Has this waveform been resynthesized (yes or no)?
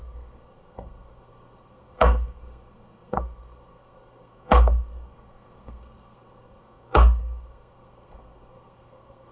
yes